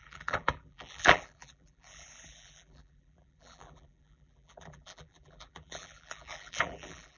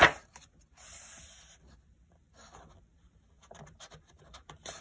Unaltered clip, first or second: second